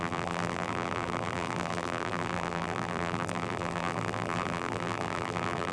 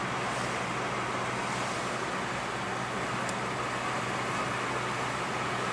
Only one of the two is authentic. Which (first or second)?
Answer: second